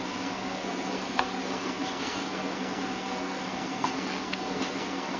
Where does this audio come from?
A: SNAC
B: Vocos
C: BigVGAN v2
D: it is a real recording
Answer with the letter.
A